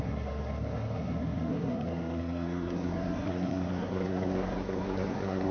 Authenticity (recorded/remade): remade